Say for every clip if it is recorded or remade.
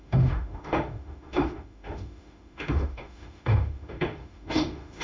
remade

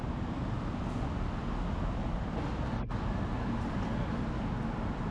recorded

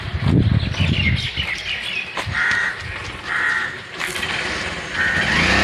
recorded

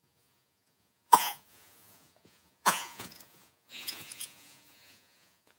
remade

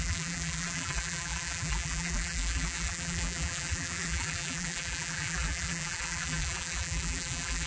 remade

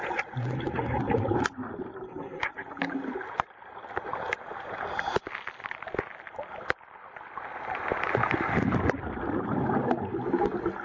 recorded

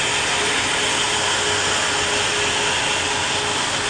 recorded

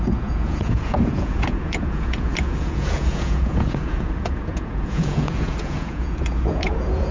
remade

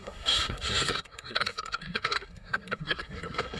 remade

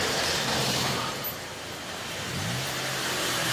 remade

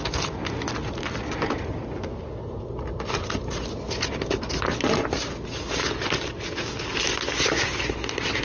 recorded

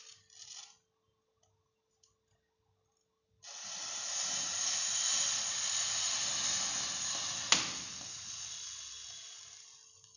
recorded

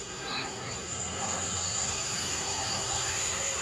remade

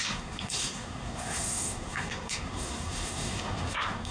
remade